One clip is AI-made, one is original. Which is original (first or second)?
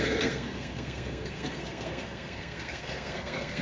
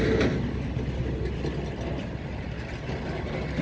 second